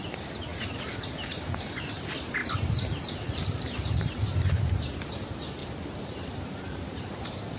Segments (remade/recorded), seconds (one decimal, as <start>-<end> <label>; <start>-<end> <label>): 0.0-0.5 recorded; 0.5-1.9 remade; 1.9-2.4 recorded; 2.4-4.5 remade; 4.5-5.6 recorded; 5.6-7.6 remade